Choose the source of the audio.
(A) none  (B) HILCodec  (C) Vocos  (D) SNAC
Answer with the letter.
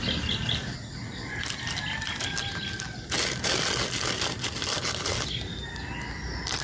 A